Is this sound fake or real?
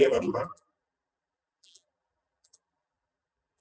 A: fake